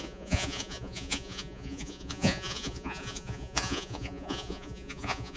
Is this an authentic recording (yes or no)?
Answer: no